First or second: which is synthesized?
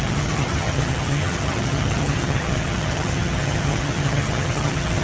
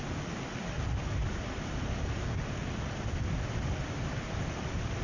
first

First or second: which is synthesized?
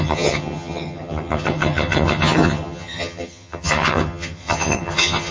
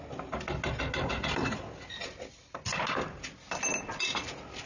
first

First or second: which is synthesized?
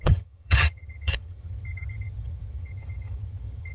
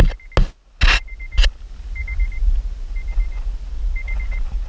first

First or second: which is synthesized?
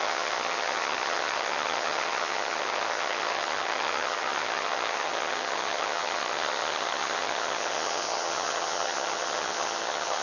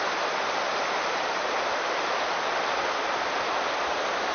first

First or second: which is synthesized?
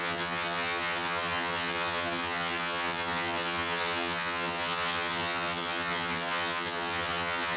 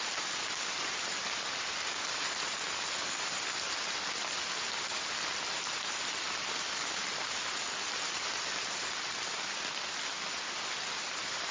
first